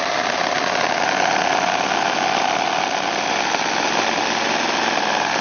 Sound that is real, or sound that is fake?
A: real